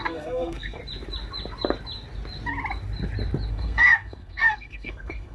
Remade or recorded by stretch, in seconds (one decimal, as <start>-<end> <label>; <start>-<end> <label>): 0.0-0.8 remade; 0.8-3.5 recorded; 3.5-5.3 remade